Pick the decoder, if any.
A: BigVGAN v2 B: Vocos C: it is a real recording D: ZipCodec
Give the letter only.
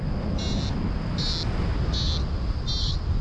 C